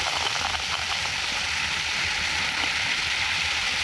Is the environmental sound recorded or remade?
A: remade